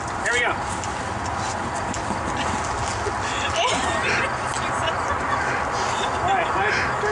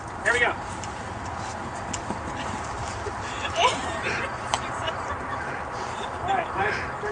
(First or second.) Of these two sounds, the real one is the first